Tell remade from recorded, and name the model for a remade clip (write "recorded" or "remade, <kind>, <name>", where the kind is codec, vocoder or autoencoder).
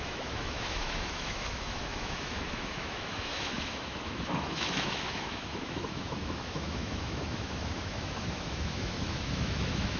remade, autoencoder, DAC-VAE